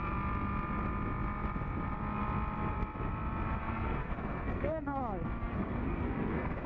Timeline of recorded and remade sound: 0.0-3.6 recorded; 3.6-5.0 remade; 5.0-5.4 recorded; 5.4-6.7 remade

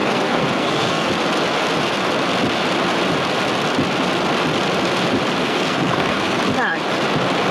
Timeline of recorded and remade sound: 0.0-1.1 remade; 1.1-5.4 recorded; 5.4-6.4 remade; 6.4-7.5 recorded

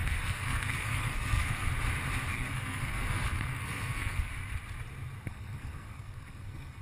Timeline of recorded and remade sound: 0.0-1.7 remade; 1.7-2.3 recorded; 2.3-4.3 remade; 4.3-5.3 recorded; 5.3-6.8 remade

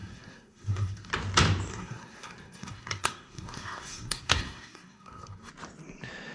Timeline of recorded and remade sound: 0.0-1.1 remade; 1.1-1.7 recorded; 1.7-5.5 remade; 5.5-6.3 recorded

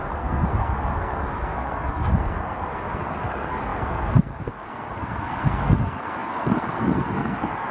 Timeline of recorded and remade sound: 0.0-7.7 remade

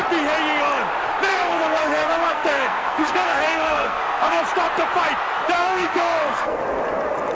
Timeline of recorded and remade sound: 0.0-1.3 recorded; 1.3-4.4 remade; 4.4-5.6 recorded; 5.6-6.6 remade; 6.6-7.3 recorded

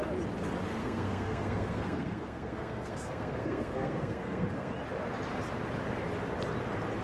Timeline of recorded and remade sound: 0.0-0.8 recorded; 0.8-4.7 remade; 4.7-7.0 recorded